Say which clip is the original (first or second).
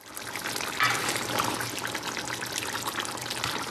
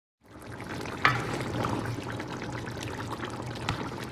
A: first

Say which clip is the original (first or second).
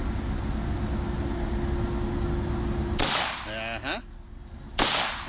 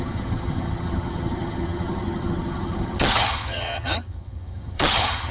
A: first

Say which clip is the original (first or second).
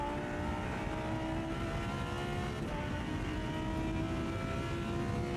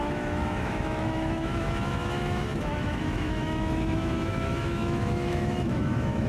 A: first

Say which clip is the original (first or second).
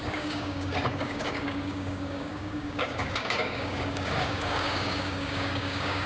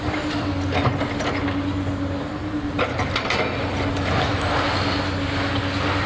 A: second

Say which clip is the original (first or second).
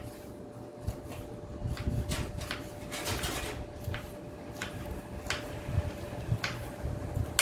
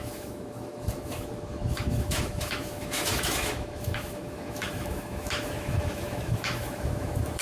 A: first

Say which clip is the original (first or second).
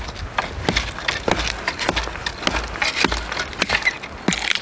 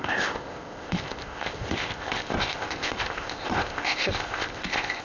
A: first